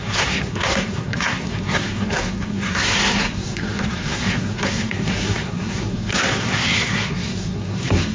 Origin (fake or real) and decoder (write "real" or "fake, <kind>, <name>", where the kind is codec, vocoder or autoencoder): fake, codec, SNAC